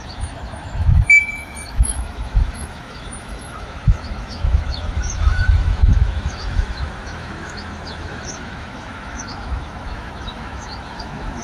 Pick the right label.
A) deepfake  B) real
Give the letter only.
A